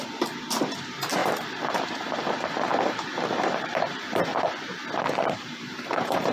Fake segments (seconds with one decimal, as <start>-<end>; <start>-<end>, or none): 0.0-4.3; 5.3-6.3